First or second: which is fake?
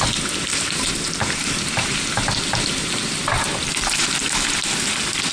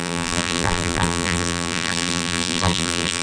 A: second